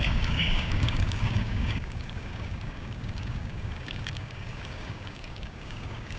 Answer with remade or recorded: remade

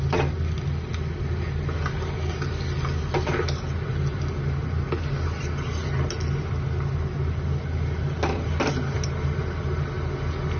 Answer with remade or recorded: recorded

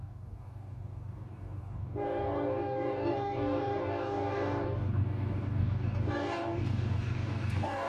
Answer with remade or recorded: remade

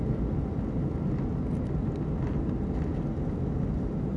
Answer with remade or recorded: recorded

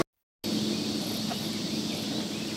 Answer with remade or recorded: recorded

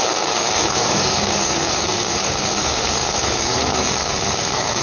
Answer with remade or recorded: remade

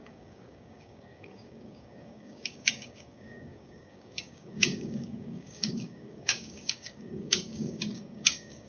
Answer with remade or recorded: remade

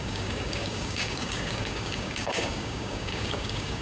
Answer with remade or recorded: remade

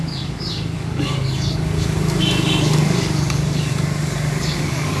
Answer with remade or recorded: remade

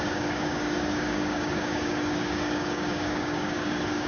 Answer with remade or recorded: remade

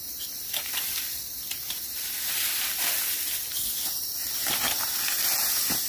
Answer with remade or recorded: recorded